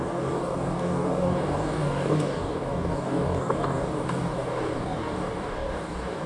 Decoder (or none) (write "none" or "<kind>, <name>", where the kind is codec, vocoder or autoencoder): codec, DAC